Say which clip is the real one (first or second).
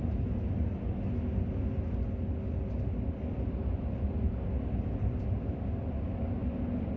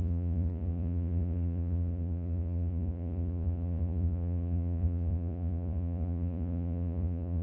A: first